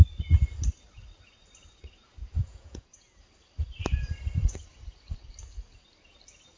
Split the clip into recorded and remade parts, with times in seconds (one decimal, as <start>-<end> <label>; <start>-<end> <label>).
0.0-2.4 recorded; 2.4-3.2 remade; 3.2-6.6 recorded

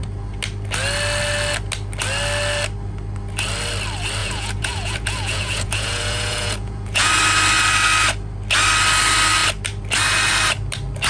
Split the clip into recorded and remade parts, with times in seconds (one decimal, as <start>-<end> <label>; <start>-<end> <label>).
0.0-4.2 recorded; 4.2-7.1 remade; 7.1-11.1 recorded